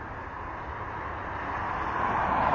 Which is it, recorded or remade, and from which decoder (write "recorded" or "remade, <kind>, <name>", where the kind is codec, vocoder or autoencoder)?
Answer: recorded